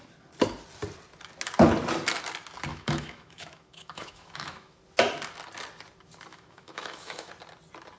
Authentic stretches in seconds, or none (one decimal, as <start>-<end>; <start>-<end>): 0.0-2.7; 4.8-6.3; 7.3-8.0